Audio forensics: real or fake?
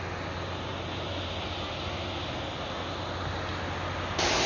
real